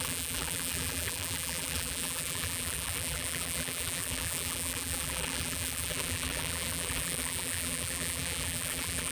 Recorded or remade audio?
remade